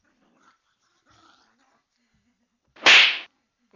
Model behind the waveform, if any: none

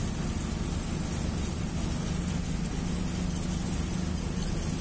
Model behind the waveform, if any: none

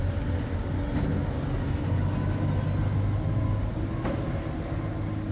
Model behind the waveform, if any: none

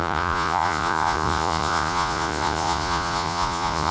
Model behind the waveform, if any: vocoder, Vocos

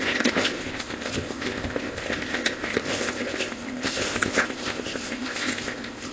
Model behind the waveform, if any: codec, ZipCodec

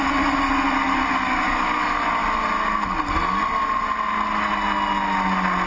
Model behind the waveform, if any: none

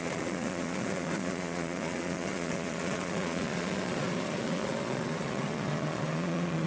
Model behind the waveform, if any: vocoder, Vocos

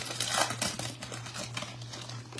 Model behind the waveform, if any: none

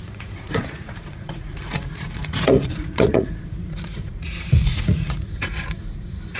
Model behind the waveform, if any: vocoder, Vocos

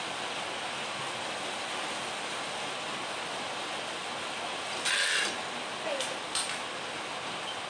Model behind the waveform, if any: none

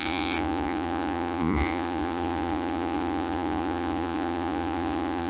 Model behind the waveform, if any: vocoder, Vocos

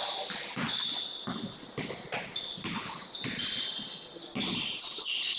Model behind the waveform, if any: none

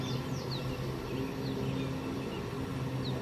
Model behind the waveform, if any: none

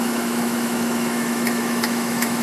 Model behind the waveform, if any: autoencoder, DAC-VAE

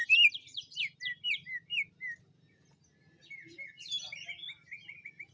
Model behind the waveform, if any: none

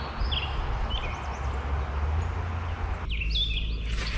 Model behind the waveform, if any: none